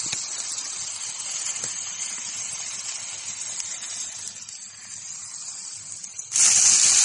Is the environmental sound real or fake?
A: real